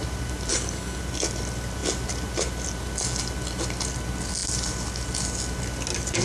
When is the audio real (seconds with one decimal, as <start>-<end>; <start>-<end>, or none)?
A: 0.0-0.5; 1.0-6.2